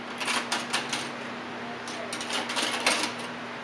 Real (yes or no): yes